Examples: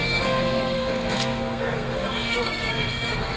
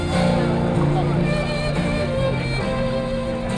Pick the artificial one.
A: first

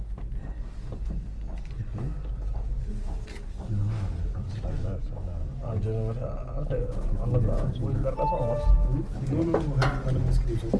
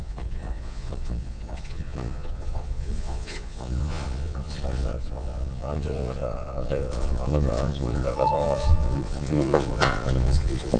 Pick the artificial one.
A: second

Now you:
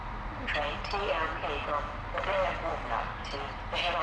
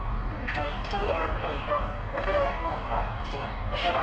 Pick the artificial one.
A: second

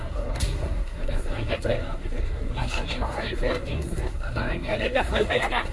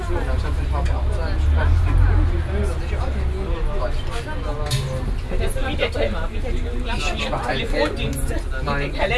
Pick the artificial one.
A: first